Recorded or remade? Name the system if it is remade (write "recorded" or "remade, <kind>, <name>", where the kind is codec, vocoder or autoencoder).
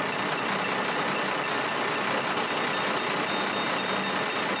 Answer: recorded